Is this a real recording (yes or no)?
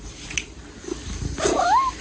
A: yes